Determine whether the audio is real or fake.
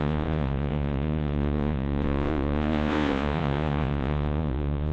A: fake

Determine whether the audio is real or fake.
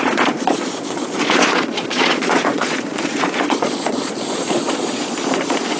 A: fake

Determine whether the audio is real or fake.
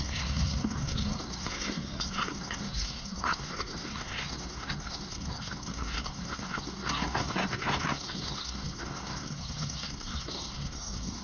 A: fake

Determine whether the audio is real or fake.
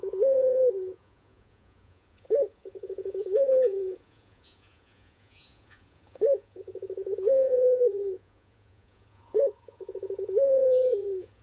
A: fake